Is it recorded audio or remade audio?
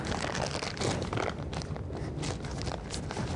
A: recorded